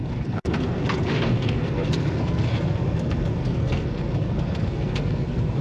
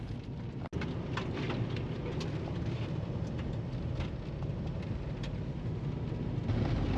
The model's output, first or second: first